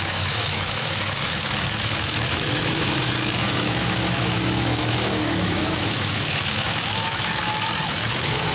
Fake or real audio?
fake